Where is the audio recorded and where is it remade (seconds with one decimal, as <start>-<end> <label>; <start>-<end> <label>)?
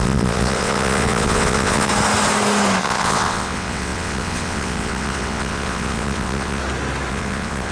0.0-1.9 remade; 1.9-2.8 recorded; 2.8-6.6 remade; 6.6-7.1 recorded; 7.1-7.7 remade